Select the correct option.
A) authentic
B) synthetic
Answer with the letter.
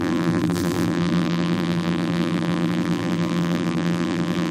B